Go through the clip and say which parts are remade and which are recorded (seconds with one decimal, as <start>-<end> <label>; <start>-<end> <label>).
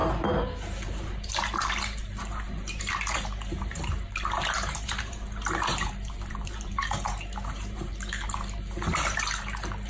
0.0-9.9 remade